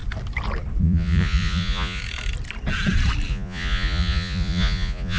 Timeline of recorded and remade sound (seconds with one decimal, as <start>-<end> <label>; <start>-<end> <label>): 0.0-0.8 recorded; 0.8-2.0 remade; 2.0-3.3 recorded; 3.3-5.2 remade